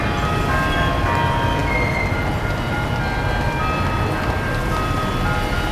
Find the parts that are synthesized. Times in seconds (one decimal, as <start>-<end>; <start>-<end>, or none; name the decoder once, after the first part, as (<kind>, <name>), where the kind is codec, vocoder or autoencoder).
none